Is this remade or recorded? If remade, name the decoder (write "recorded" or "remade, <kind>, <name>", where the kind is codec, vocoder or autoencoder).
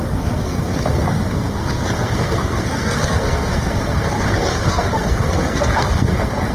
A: remade, codec, SNAC